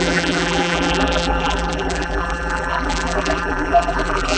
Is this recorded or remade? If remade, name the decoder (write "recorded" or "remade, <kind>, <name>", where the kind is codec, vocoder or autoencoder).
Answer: remade, vocoder, BigVGAN v2